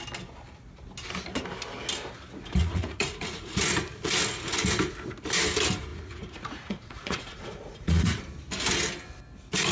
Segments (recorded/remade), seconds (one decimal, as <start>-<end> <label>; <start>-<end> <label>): 0.0-2.6 recorded; 2.6-3.6 remade; 3.6-5.9 recorded; 5.9-8.2 remade; 8.2-9.7 recorded